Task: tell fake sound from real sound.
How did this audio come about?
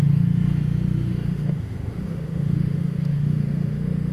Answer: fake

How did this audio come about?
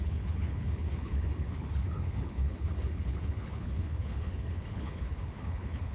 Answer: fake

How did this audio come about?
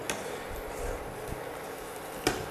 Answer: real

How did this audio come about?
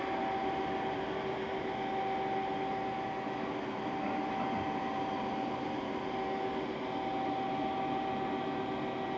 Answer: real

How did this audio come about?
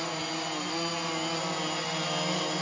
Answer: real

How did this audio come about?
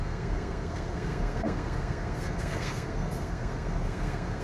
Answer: fake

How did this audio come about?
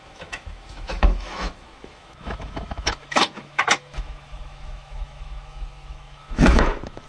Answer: fake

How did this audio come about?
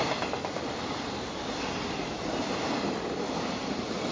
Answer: real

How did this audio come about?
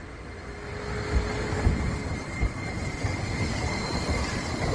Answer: real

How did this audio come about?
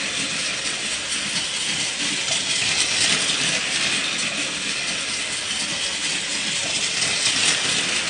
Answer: real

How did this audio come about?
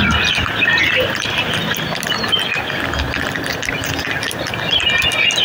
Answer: real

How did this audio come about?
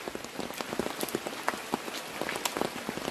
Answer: real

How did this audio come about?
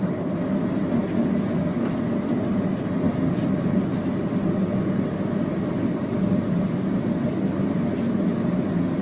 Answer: real